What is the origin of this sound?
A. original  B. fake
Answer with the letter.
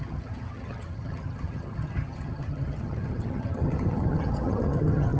B